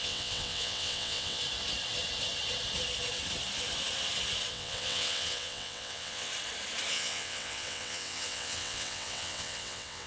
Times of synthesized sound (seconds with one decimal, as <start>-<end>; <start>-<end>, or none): 0.0-1.4; 4.5-6.3; 6.9-10.1